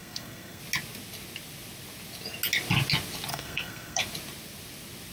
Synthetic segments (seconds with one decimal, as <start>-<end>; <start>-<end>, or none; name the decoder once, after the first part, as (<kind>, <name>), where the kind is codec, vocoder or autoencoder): 0.0-0.6 (codec, SNAC); 3.3-4.0